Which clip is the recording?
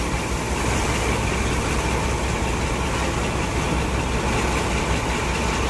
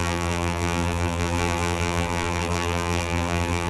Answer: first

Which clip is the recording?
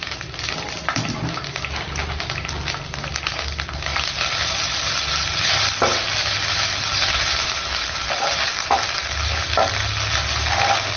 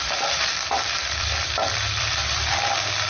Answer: first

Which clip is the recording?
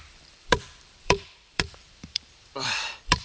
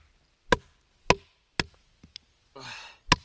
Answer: second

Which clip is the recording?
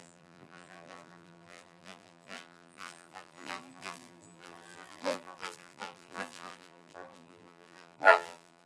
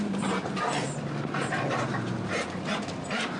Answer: second